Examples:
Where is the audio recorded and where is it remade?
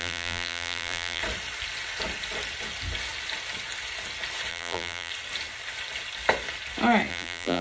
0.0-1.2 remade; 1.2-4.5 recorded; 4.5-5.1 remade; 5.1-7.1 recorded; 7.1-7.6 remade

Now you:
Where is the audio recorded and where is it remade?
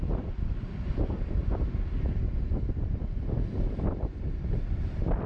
0.0-1.4 remade; 1.4-4.6 recorded; 4.6-5.3 remade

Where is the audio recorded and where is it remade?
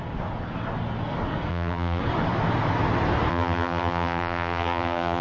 0.0-1.5 recorded; 1.5-2.0 remade; 2.0-3.3 recorded; 3.3-5.2 remade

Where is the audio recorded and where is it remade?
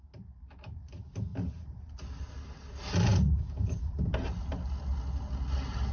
0.0-1.3 recorded; 1.3-1.9 remade; 1.9-3.1 recorded; 3.1-4.1 remade; 4.1-5.9 recorded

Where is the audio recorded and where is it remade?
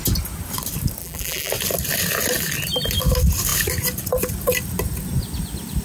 0.0-1.0 recorded; 1.0-1.5 remade; 1.5-5.8 recorded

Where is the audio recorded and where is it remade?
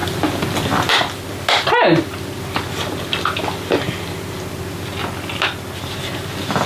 0.0-6.7 recorded